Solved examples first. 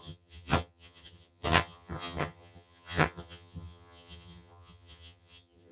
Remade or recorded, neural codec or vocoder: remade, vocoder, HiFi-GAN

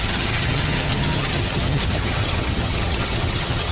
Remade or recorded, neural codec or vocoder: remade, vocoder, HiFi-GAN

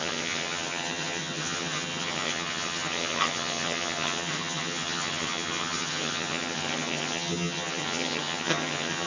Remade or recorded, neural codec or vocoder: remade, vocoder, HiFi-GAN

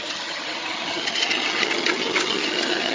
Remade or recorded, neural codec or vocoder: remade, vocoder, HiFi-GAN